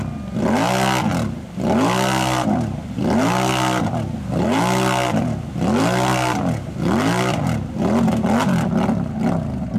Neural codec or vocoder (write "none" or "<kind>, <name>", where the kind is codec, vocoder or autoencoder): none